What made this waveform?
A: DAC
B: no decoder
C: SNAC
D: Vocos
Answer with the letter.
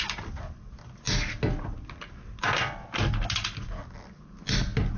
B